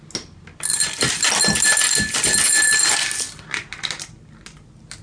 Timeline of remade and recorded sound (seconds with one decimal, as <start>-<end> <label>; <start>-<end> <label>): 0.0-5.0 recorded